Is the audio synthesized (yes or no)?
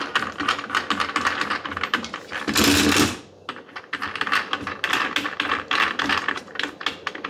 no